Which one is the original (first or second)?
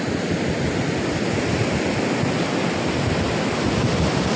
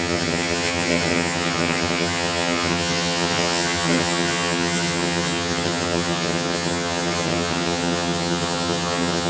first